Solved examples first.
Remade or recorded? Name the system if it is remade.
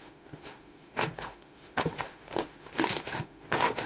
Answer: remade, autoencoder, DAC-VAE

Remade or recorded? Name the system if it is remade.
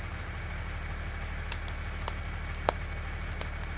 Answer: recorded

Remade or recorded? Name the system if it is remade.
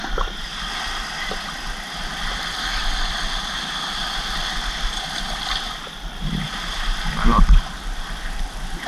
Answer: remade, vocoder, BigVGAN v2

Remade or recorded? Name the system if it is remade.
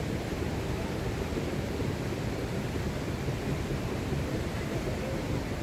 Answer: recorded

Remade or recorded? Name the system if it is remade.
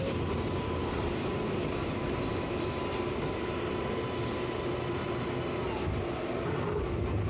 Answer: remade, vocoder, BigVGAN v2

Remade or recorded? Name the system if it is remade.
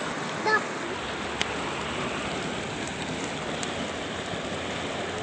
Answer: recorded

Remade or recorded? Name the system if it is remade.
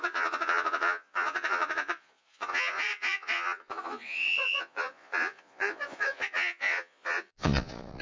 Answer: remade, vocoder, Vocos